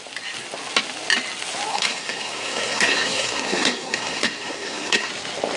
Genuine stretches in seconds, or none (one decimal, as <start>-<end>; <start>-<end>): 0.0-1.7; 5.1-5.6